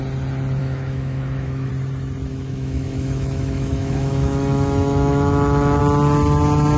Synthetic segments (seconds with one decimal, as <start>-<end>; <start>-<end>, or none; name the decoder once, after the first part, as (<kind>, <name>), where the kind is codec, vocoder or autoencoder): 0.6-1.7 (autoencoder, DAC-VAE); 2.3-5.8